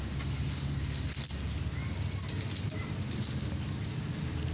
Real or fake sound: real